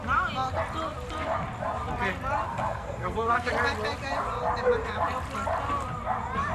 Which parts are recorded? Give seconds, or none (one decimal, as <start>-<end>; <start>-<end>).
0.0-2.5; 3.5-6.5